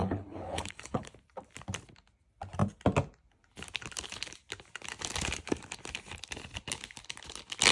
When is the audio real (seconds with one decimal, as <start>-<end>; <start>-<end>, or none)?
1.1-7.7